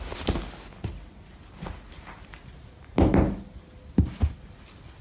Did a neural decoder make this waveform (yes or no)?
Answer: no